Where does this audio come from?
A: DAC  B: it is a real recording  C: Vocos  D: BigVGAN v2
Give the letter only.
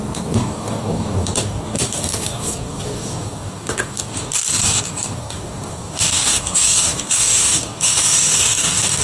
A